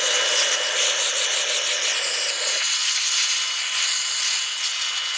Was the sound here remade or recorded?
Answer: recorded